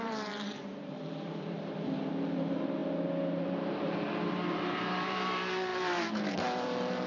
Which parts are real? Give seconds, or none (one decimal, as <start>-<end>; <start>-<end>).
none